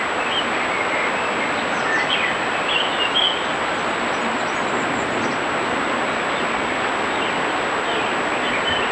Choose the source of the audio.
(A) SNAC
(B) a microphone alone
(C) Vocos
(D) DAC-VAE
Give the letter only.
B